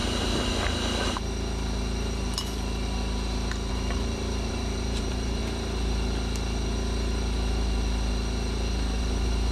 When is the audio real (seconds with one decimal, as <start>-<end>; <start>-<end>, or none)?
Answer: 0.0-3.7; 5.4-9.0